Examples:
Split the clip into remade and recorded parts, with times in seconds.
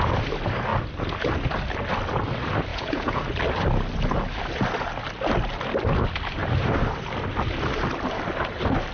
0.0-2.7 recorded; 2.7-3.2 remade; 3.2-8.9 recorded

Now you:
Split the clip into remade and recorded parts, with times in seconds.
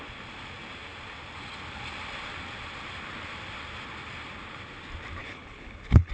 0.0-5.2 recorded; 5.2-6.1 remade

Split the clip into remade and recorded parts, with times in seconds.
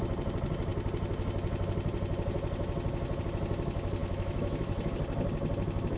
0.0-4.0 recorded; 4.0-4.9 remade; 4.9-6.0 recorded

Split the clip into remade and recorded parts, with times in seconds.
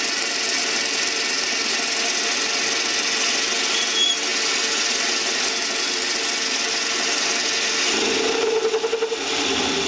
0.0-9.9 recorded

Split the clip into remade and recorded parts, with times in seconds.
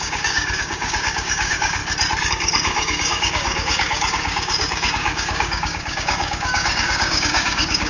0.0-1.8 remade; 1.8-2.3 recorded; 2.3-7.9 remade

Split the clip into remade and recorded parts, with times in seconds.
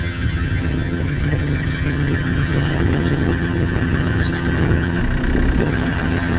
0.0-5.0 remade; 5.0-5.6 recorded; 5.6-6.4 remade